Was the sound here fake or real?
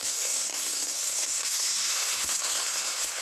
fake